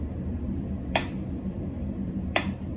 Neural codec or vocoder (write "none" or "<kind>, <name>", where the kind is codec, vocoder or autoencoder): vocoder, BigVGAN v2